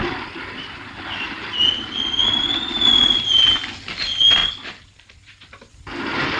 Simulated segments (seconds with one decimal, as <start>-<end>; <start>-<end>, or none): none